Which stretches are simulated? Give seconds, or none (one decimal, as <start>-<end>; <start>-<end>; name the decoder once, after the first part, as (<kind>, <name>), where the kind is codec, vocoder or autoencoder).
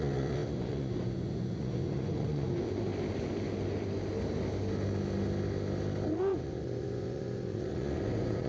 0.0-2.9 (vocoder, Vocos); 6.1-8.5